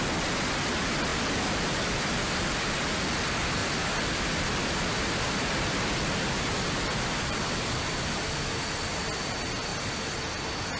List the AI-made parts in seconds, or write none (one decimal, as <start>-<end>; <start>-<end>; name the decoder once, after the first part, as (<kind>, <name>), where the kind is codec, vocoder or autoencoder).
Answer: 1.1-2.8 (vocoder, BigVGAN v2); 3.6-8.4; 9.7-10.4